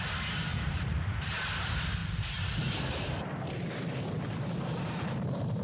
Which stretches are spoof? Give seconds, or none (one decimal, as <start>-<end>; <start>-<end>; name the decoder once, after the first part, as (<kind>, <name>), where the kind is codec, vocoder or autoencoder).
0.5-1.3 (vocoder, BigVGAN v2); 2.0-5.6